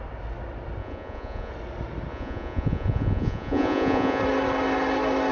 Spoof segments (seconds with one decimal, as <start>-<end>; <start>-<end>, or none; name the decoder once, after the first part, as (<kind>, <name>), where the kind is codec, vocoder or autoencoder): 0.8-1.5 (vocoder, Vocos); 2.1-4.2